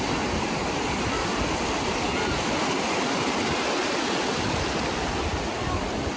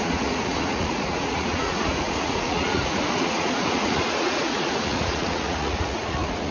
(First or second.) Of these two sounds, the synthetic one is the second